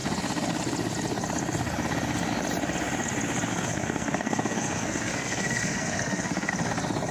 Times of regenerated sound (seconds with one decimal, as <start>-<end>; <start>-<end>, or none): 3.5-6.5